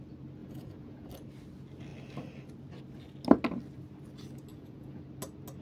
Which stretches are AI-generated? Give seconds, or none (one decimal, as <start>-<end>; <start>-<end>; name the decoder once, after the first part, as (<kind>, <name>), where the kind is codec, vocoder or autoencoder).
0.4-1.1 (vocoder, Vocos); 4.5-5.0